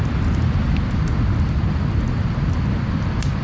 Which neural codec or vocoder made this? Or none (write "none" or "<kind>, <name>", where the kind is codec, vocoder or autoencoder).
none